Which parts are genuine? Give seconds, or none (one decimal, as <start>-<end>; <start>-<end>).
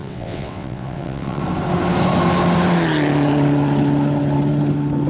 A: 1.4-5.1